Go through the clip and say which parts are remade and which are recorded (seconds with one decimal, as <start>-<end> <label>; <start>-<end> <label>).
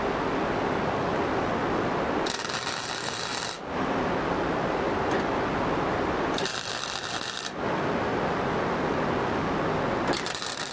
0.0-10.7 recorded